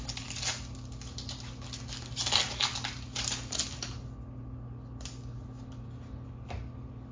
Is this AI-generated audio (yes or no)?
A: no